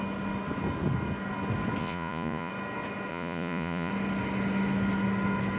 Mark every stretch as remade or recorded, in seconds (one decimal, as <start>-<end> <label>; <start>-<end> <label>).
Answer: 0.0-1.8 recorded; 1.8-2.5 remade; 2.5-3.1 recorded; 3.1-3.9 remade; 3.9-5.6 recorded